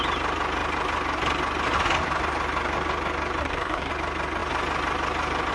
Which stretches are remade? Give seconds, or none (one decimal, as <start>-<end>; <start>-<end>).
3.4-3.9